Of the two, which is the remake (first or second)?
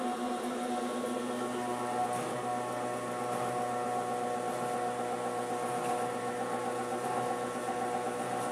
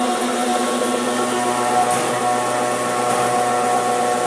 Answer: second